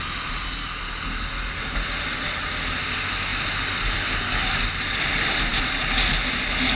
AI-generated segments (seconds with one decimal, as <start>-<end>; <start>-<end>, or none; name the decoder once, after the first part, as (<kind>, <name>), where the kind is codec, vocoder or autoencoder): none